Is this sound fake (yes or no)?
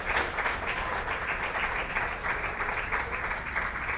no